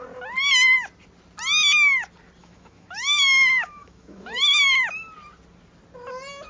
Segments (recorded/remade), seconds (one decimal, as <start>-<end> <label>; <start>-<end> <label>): 0.0-2.4 recorded; 2.4-4.6 remade; 4.6-6.5 recorded